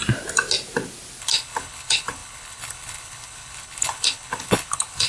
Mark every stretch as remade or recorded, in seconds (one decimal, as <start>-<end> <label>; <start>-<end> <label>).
0.0-1.2 recorded; 1.2-5.1 remade